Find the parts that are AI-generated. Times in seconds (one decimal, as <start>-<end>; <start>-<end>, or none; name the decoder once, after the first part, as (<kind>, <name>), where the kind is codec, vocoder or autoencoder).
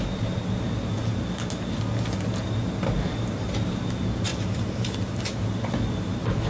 4.3-5.5 (vocoder, BigVGAN v2)